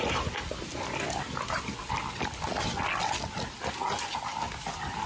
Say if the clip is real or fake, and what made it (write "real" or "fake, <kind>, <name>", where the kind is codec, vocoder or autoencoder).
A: real